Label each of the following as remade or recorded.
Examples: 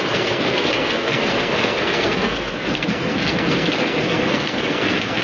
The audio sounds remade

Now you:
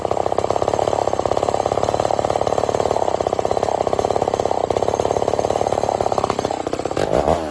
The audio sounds recorded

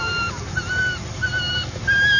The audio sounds recorded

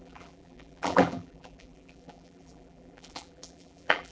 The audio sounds remade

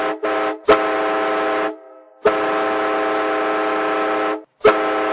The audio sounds recorded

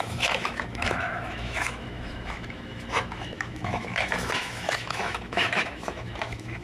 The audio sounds remade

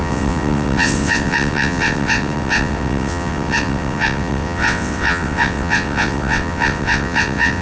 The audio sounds remade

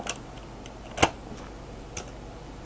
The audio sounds recorded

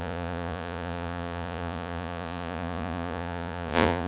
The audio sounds remade